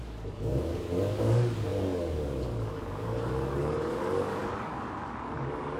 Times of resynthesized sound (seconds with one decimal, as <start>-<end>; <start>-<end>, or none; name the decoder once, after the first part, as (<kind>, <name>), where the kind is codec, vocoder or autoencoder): 0.0-5.8 (codec, DAC)